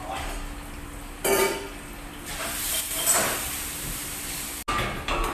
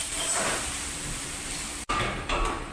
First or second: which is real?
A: first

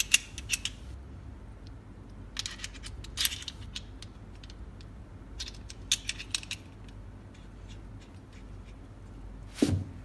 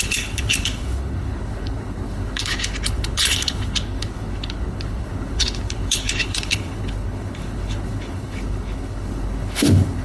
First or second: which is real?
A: first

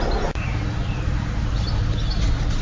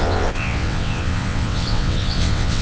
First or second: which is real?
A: first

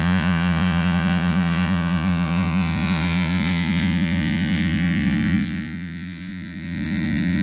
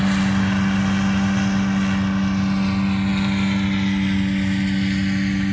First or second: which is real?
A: second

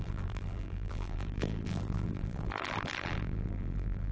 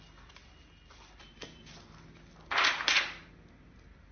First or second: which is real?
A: second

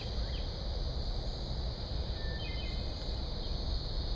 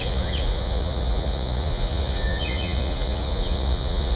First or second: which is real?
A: first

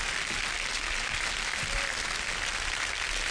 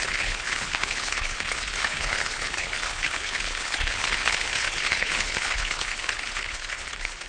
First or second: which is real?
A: first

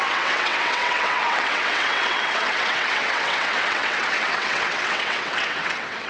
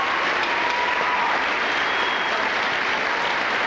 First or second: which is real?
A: second